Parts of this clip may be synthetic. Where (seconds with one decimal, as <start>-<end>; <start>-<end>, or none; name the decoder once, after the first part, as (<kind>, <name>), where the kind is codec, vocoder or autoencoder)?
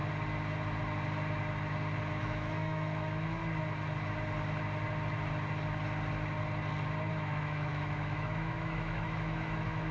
2.1-3.4 (autoencoder, DAC-VAE); 7.1-9.9